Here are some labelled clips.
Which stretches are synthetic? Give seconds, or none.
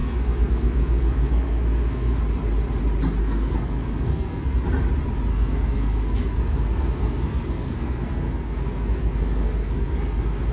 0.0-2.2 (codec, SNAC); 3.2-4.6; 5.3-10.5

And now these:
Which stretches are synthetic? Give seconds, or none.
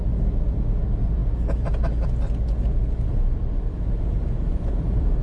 none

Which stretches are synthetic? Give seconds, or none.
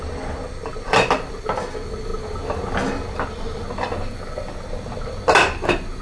none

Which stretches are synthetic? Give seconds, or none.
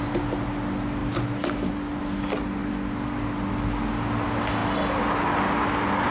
none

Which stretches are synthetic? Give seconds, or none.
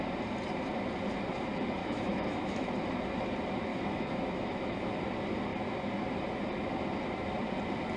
1.8-2.7 (autoencoder, DAC-VAE); 3.7-5.0